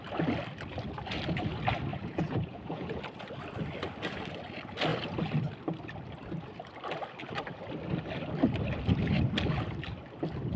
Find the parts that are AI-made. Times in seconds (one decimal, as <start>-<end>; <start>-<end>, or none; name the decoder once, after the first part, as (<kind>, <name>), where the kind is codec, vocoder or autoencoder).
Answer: 1.9-3.0 (vocoder, Vocos)